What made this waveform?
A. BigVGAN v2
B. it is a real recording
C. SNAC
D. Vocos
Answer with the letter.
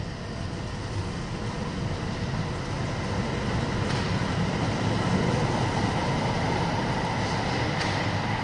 B